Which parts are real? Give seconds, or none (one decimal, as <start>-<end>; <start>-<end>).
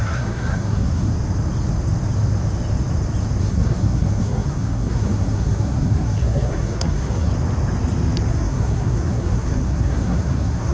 1.1-3.4; 7.3-8.3